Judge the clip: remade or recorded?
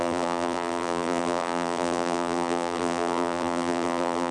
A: remade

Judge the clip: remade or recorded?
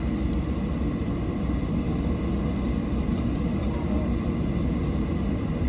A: recorded